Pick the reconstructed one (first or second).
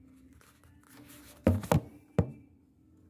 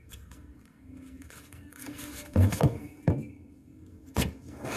second